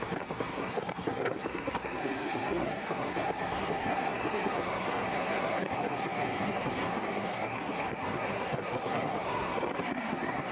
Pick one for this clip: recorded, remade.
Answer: remade